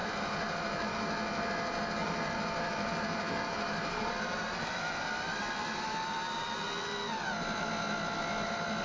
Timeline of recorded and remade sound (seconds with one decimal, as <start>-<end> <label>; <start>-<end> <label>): 0.0-0.9 remade; 0.9-2.0 recorded; 2.0-5.0 remade; 5.0-8.8 recorded